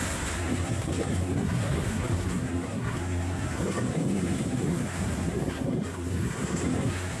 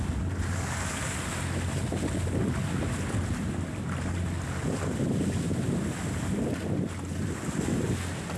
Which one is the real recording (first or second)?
second